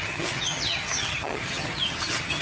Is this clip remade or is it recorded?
remade